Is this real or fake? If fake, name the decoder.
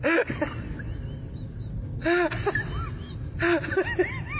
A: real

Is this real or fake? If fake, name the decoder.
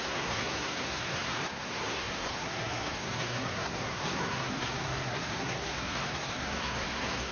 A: fake, codec, SNAC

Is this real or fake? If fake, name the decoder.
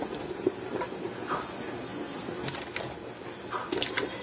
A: real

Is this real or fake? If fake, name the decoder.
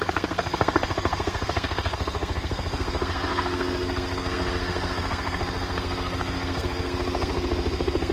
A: fake, codec, SNAC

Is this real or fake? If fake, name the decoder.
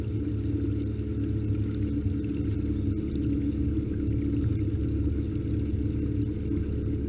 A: real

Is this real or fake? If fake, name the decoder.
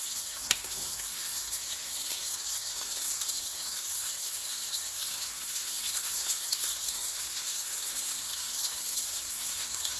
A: fake, codec, SNAC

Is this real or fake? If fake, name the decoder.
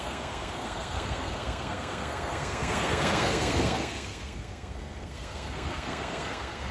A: fake, codec, SNAC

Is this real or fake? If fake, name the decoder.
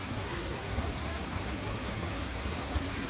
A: fake, codec, SNAC